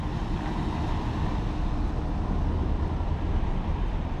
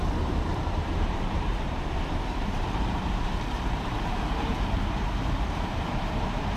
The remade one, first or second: second